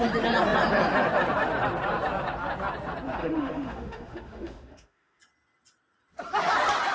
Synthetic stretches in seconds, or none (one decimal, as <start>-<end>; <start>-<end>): 3.2-5.2